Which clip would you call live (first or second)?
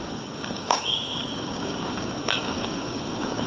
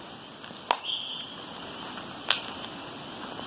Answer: second